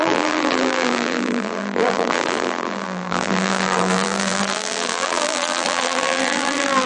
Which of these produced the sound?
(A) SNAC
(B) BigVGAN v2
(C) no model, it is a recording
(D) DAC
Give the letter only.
B